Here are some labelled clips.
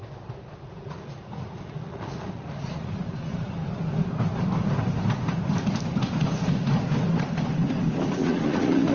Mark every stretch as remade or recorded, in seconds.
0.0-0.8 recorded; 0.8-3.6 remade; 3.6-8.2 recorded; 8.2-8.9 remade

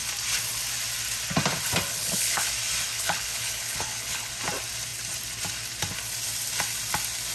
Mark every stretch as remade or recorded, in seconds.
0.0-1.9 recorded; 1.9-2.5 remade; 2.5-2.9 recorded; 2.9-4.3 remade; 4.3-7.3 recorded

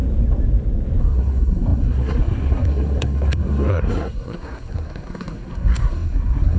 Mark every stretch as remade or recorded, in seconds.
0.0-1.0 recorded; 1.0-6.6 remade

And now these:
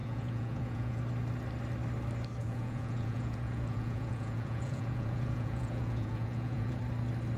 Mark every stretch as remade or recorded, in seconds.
0.0-1.0 remade; 1.0-2.4 recorded; 2.4-6.8 remade; 6.8-7.4 recorded

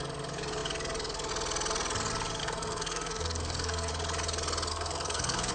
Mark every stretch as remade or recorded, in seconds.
0.0-2.4 recorded; 2.4-3.9 remade; 3.9-4.7 recorded; 4.7-5.5 remade

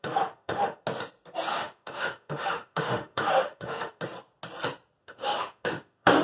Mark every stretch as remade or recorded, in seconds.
0.0-0.8 remade; 0.8-1.5 recorded; 1.5-4.0 remade; 4.0-5.0 recorded; 5.0-6.2 remade

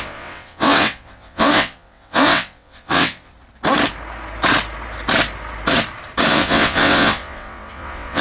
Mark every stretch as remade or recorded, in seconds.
0.0-3.3 remade; 3.3-6.3 recorded; 6.3-8.2 remade

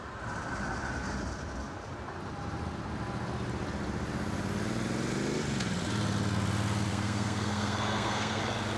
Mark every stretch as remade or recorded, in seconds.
0.0-6.9 recorded; 6.9-8.4 remade; 8.4-8.8 recorded